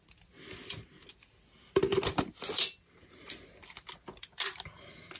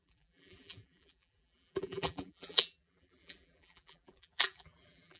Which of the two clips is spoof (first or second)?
second